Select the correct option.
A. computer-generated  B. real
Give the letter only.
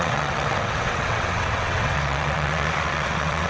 A